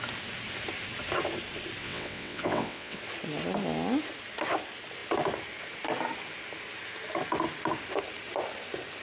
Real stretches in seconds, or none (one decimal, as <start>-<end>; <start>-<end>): 0.0-1.8; 3.0-9.0